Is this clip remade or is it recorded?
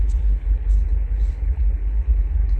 remade